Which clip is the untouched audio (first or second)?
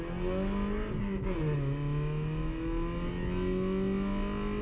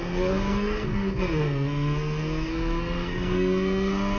first